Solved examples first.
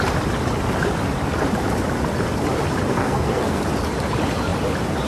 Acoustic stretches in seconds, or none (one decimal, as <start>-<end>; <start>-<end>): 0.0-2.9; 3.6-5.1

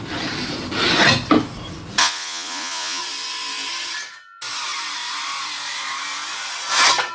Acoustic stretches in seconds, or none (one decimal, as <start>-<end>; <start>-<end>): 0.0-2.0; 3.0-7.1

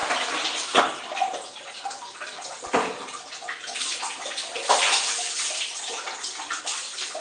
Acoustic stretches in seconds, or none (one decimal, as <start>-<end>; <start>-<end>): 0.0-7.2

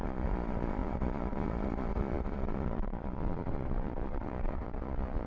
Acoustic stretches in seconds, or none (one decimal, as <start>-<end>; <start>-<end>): none

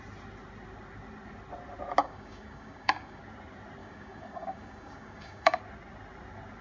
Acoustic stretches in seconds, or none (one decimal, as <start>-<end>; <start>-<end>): 0.0-2.0; 3.2-3.8; 5.6-6.6

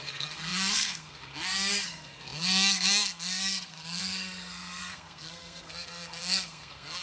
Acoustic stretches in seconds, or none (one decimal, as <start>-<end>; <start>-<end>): none